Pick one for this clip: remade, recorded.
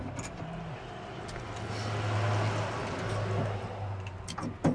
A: recorded